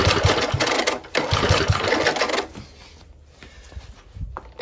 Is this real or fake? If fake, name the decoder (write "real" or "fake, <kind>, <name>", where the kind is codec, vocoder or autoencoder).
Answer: real